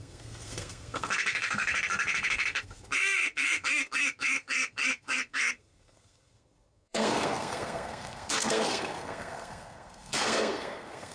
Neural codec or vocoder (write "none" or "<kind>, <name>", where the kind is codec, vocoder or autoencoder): codec, SNAC